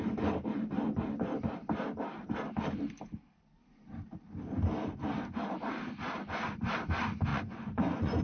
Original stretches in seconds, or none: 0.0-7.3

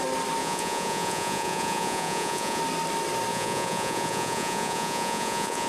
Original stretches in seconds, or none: 0.0-0.4; 2.6-3.3

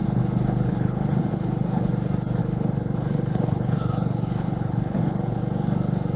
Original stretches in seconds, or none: 1.9-2.4; 5.4-6.2

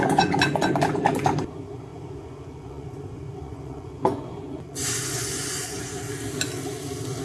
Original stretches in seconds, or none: 0.7-1.9; 6.0-7.2

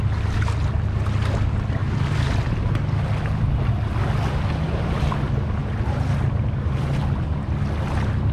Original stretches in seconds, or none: 0.0-5.6; 7.0-8.3

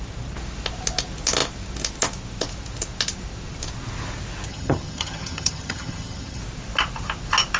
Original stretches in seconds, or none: 0.0-4.5; 6.4-7.6

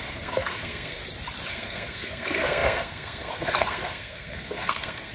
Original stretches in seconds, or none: 1.0-1.5